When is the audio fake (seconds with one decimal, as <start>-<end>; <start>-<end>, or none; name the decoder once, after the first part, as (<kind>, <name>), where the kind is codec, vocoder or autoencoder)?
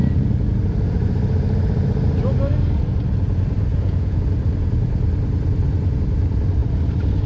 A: 3.7-4.2 (vocoder, Vocos)